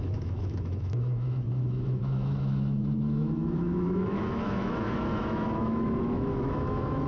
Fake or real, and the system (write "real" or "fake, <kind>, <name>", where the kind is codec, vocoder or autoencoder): fake, autoencoder, DAC-VAE